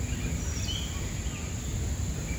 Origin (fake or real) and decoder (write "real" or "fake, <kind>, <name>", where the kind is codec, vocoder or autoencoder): real